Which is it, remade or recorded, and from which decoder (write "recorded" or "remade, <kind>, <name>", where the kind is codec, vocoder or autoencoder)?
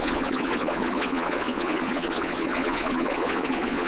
remade, vocoder, Vocos